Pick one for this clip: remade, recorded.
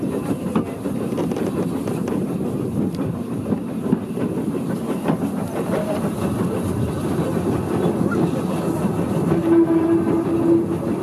recorded